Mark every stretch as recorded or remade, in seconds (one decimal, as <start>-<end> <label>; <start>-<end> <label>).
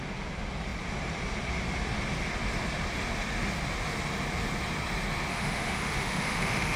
0.0-5.3 recorded; 5.3-6.8 remade